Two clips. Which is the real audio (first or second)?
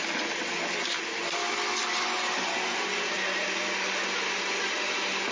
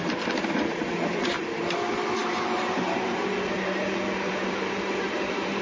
first